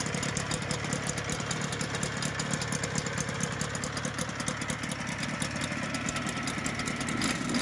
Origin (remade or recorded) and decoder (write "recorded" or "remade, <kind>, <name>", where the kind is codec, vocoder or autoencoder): recorded